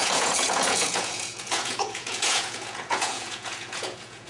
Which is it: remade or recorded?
remade